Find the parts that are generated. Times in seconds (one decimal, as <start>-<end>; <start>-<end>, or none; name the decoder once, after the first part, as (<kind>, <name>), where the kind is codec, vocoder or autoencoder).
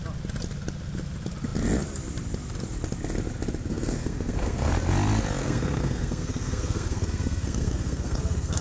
3.7-4.7 (codec, SNAC); 5.4-8.6